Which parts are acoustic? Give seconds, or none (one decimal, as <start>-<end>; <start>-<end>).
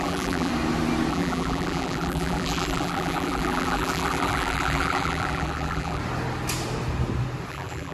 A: 0.5-1.1; 6.0-7.5